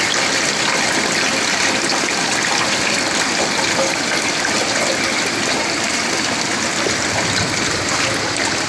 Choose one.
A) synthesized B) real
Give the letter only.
B